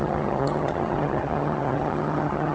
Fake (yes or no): yes